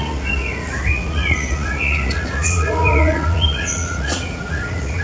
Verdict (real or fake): fake